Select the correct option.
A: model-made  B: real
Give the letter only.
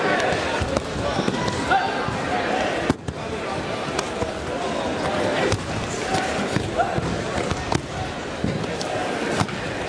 B